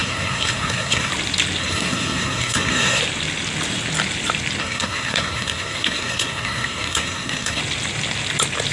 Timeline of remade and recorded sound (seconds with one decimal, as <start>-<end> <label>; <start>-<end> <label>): 0.0-1.1 remade; 1.1-1.6 recorded; 1.6-3.0 remade; 3.0-4.6 recorded; 4.6-7.6 remade; 7.6-8.7 recorded